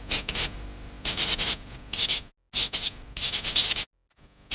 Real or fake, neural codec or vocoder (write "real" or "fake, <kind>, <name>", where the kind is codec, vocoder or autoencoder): real